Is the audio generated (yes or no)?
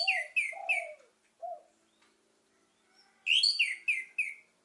no